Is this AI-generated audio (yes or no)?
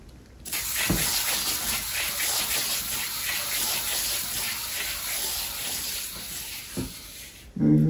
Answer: no